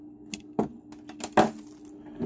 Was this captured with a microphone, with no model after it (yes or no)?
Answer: yes